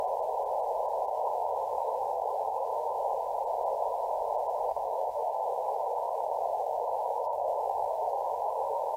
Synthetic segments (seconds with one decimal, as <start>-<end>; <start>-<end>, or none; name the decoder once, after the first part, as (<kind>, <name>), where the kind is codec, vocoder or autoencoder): 1.1-3.0 (autoencoder, DAC-VAE); 4.7-9.0